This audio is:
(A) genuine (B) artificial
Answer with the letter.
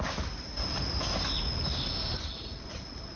A